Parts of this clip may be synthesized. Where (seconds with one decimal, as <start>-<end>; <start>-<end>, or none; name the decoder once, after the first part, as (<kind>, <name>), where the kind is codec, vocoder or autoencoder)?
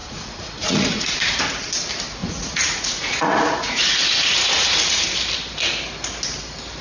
0.0-1.4 (vocoder, Vocos); 2.2-5.0